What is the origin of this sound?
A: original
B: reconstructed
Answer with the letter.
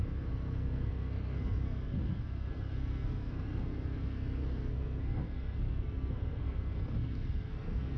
B